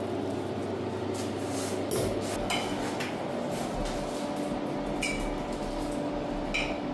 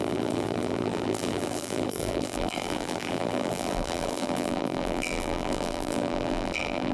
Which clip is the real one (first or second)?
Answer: first